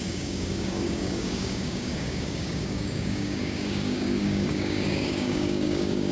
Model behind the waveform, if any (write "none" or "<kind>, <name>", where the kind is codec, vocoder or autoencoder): codec, DAC